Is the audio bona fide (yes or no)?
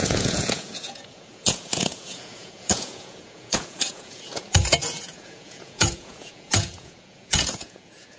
no